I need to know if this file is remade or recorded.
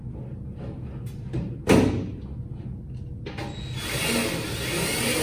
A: recorded